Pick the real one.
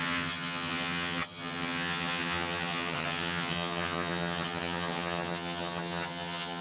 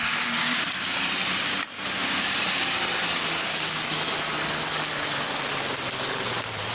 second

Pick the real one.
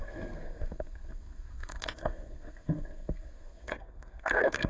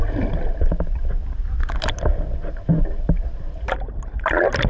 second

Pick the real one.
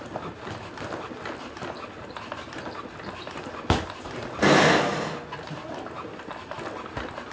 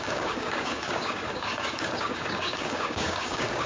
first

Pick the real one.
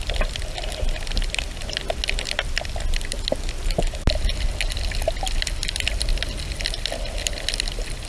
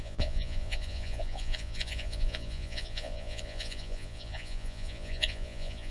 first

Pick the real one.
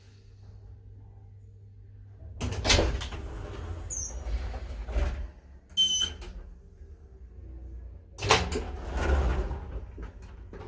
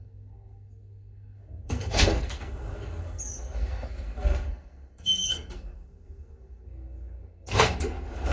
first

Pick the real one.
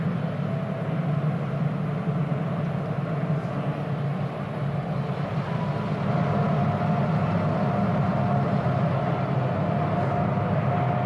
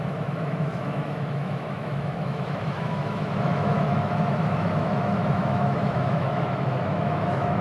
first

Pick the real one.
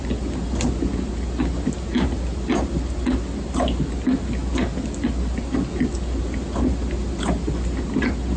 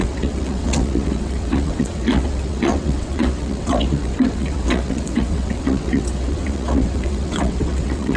first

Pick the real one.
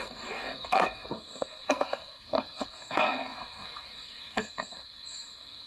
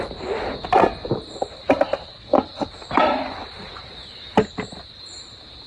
second